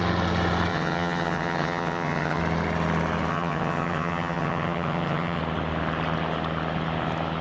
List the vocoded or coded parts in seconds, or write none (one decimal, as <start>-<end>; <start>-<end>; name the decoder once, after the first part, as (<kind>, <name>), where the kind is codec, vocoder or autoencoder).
0.7-2.4 (vocoder, HiFi-GAN); 3.3-5.4